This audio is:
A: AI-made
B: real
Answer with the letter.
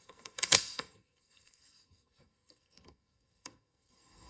A